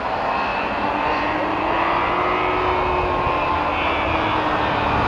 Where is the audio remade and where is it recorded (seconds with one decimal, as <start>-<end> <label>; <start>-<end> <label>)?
0.0-0.5 recorded; 0.5-2.1 remade; 2.1-5.1 recorded